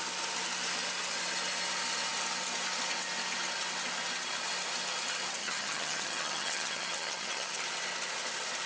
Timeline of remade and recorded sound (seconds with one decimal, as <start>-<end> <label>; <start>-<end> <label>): 0.0-5.4 recorded; 5.4-7.6 remade; 7.6-8.7 recorded